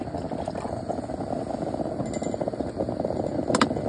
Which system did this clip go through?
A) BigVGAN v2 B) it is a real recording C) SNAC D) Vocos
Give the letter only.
B